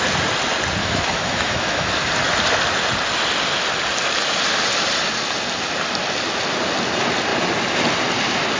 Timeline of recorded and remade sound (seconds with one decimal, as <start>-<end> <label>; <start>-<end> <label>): 0.0-0.8 recorded; 0.8-1.9 remade; 1.9-8.6 recorded